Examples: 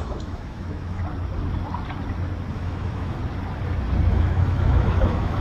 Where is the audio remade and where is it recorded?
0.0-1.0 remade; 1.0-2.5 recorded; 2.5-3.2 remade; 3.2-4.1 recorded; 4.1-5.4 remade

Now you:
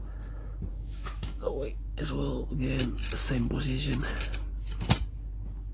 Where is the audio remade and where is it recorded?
0.0-0.7 recorded; 0.7-2.1 remade; 2.1-5.7 recorded

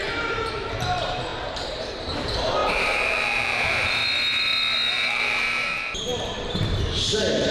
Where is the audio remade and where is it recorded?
0.0-4.0 remade; 4.0-4.9 recorded; 4.9-7.5 remade

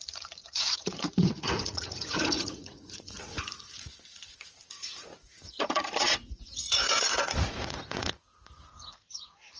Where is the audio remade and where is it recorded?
0.0-9.6 remade

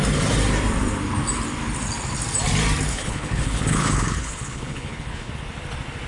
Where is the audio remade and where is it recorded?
0.0-2.9 recorded; 2.9-5.3 remade; 5.3-6.1 recorded